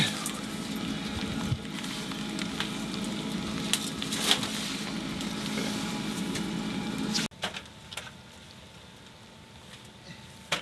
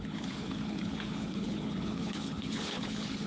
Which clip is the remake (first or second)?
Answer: second